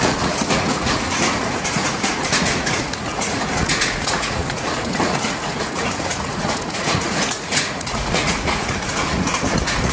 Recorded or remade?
remade